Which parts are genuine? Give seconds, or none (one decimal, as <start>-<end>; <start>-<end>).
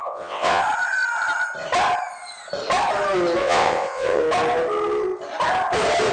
0.6-3.4; 4.2-6.1